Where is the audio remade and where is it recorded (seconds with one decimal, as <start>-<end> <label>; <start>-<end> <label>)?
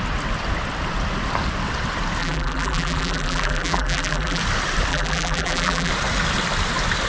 0.0-2.2 recorded; 2.2-4.4 remade; 4.4-4.9 recorded; 4.9-5.9 remade; 5.9-7.1 recorded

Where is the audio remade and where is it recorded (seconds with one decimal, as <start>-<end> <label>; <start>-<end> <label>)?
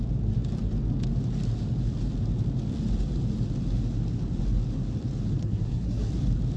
0.0-5.4 recorded; 5.4-6.1 remade; 6.1-6.6 recorded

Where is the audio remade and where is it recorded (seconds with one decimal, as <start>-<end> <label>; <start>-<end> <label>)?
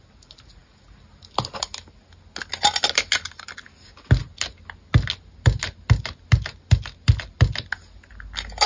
0.0-8.7 recorded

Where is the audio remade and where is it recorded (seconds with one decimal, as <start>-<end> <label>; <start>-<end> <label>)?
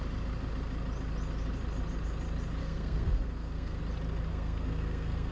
0.0-2.6 recorded; 2.6-3.8 remade; 3.8-4.3 recorded; 4.3-5.3 remade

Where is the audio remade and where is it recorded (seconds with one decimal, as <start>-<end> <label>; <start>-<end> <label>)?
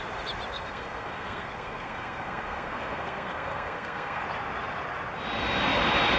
0.0-0.5 recorded; 0.5-4.2 remade; 4.2-6.2 recorded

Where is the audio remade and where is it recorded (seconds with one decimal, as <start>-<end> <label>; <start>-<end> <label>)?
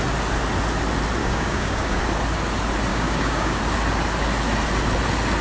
0.0-1.2 recorded; 1.2-2.0 remade; 2.0-2.9 recorded; 2.9-3.6 remade; 3.6-5.4 recorded